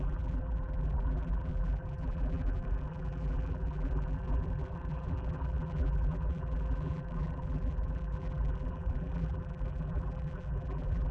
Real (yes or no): no